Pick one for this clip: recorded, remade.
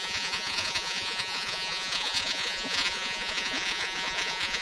remade